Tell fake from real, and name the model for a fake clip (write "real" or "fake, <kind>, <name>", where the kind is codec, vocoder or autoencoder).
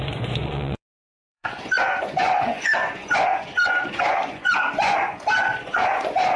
fake, vocoder, Vocos